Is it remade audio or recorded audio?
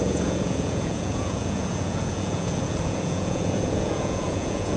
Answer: remade